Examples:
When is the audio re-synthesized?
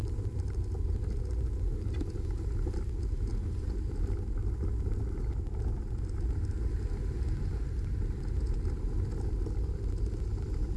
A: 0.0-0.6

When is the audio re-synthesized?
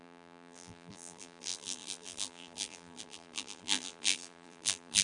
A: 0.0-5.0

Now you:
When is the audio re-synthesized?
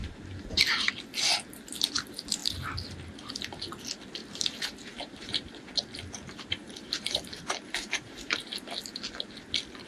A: 0.0-0.9; 4.2-5.5; 6.6-8.8